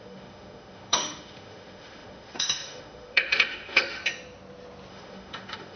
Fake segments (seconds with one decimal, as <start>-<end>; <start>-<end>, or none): 0.0-4.0; 4.9-5.8

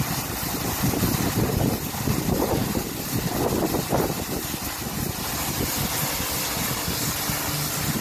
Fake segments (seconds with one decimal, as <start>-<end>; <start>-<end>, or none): none

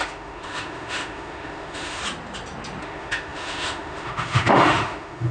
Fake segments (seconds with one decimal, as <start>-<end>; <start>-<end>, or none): 0.0-2.0; 2.8-5.3